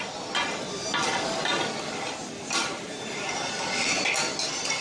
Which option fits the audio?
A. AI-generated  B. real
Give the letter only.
B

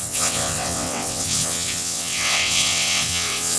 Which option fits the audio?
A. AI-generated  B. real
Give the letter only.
A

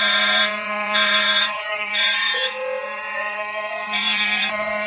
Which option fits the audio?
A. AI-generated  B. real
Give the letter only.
A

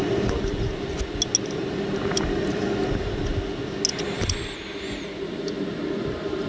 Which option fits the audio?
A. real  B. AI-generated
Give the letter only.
A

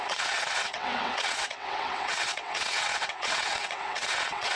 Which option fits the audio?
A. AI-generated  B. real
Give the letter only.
A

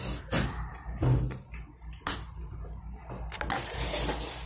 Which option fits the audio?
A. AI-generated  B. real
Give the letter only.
B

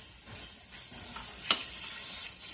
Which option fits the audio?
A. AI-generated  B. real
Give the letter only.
B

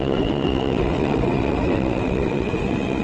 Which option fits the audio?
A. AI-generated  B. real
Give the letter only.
A